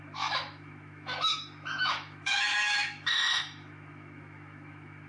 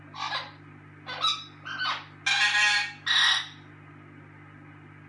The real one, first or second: second